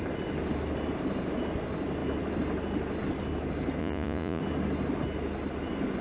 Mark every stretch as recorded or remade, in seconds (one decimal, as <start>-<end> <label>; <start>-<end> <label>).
0.0-3.8 recorded; 3.8-4.4 remade; 4.4-6.0 recorded